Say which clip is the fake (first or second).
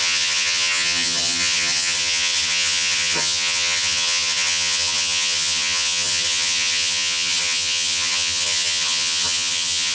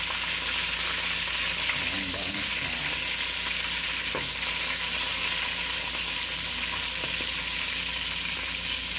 first